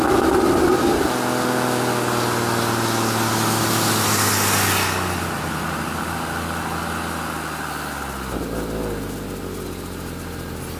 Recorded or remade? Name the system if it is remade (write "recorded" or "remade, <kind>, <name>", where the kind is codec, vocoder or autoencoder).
recorded